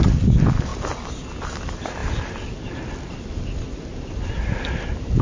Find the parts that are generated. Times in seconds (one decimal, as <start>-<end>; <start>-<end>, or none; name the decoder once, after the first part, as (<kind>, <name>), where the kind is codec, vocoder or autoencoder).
none